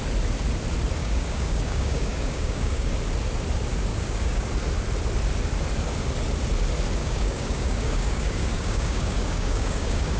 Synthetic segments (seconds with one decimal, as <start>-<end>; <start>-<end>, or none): 1.0-2.9; 3.9-4.5; 7.0-10.2

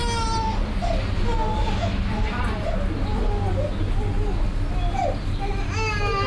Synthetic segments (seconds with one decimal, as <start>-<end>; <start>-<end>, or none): none

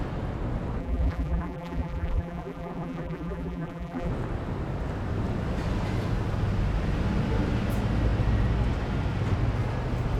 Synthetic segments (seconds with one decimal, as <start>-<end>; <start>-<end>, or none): 0.8-4.1

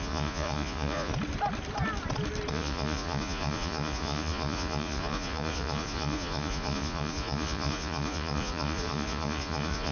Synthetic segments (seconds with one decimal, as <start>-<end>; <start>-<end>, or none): 0.0-1.1; 2.5-9.9

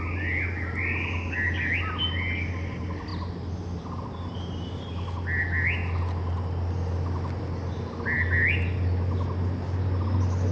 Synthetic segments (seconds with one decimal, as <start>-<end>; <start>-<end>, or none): none

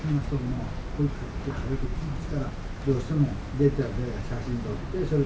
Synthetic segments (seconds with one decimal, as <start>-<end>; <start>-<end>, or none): none

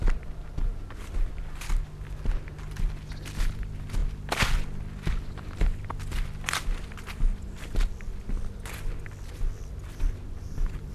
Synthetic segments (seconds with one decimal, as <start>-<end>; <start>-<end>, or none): none